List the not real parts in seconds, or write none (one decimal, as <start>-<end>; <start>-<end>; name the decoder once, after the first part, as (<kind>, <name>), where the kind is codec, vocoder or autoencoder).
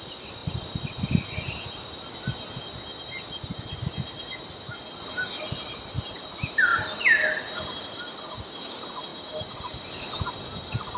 none